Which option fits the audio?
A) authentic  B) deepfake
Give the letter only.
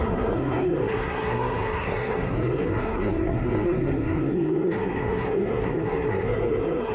B